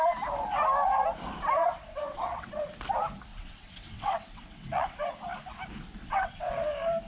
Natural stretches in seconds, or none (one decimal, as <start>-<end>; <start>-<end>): 0.0-1.6; 2.7-3.3; 5.0-6.0; 6.5-7.1

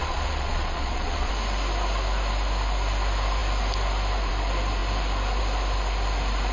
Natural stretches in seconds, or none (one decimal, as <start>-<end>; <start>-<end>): 1.3-6.5

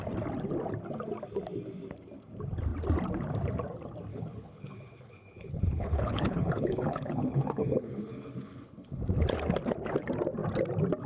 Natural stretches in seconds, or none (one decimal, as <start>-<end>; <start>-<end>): 0.0-4.1; 9.0-11.1

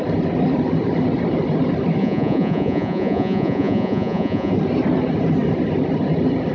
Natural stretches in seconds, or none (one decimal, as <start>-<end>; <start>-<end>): 0.0-2.0; 4.5-6.5

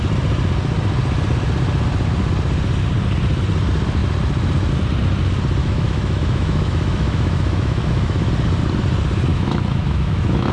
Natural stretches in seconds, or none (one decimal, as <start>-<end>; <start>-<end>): 0.0-5.6; 8.3-9.3

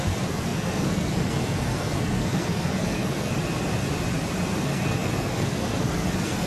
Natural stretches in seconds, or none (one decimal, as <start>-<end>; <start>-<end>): 3.3-4.6

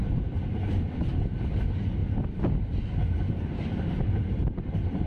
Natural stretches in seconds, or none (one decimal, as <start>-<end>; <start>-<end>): 0.0-5.1